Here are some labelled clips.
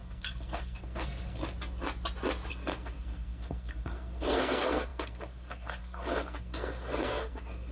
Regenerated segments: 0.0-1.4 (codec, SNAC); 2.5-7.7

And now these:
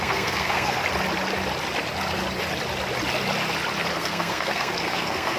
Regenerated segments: 0.0-0.8 (codec, SNAC); 3.9-5.4

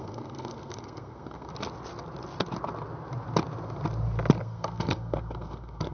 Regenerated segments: 0.0-1.5 (codec, SNAC); 4.4-5.9

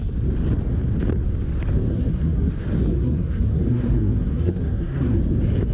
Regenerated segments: 1.9-2.5 (codec, SNAC); 2.9-5.2

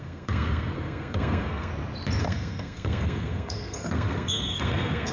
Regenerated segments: 0.0-1.7 (codec, SNAC); 2.2-5.1

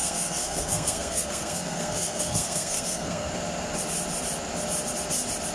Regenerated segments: 0.0-3.3 (codec, SNAC)